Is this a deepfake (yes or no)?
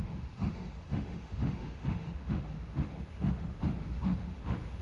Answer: yes